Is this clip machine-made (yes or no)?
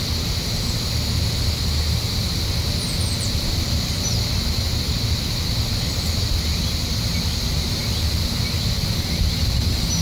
no